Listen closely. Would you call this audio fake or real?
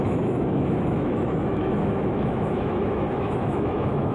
fake